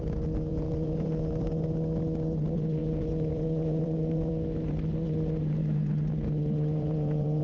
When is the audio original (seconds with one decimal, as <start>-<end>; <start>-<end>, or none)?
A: 0.0-0.5; 1.5-2.8; 4.3-5.6